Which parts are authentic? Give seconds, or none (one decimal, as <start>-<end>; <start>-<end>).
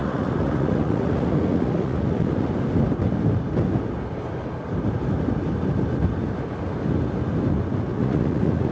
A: 2.5-7.9